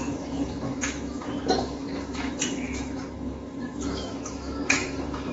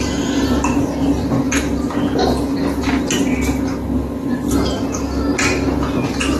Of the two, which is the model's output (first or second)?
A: first